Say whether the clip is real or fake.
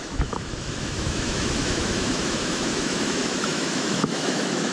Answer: fake